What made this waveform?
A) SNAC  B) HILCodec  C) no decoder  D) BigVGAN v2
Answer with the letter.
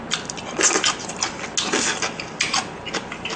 C